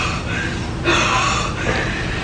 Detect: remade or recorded recorded